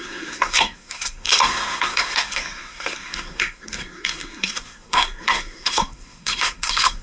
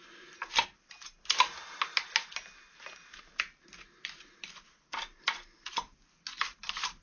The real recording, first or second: second